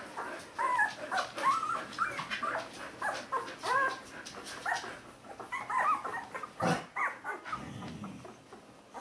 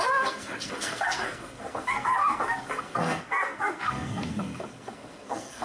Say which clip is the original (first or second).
first